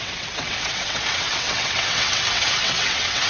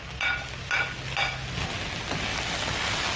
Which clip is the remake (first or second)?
first